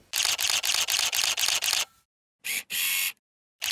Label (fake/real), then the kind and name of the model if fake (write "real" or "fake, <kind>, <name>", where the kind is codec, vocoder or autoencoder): real